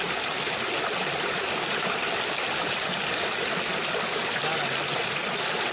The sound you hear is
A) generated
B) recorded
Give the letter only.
B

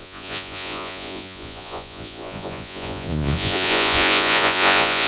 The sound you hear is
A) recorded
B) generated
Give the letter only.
B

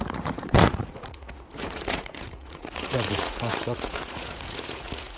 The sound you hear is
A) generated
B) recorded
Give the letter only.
A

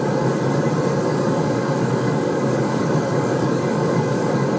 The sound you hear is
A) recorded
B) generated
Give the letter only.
B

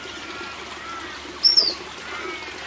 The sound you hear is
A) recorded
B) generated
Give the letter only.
A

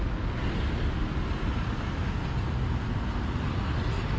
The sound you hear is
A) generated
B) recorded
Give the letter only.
B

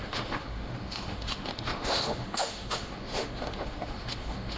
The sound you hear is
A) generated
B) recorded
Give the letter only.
A